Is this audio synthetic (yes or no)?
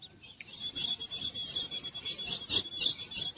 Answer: no